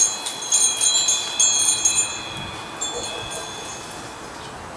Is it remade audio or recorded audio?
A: recorded